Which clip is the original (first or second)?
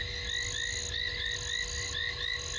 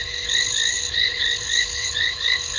first